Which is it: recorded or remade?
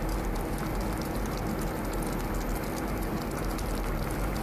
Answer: recorded